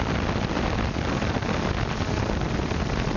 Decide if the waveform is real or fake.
real